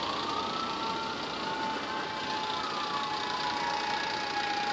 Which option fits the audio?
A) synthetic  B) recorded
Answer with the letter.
B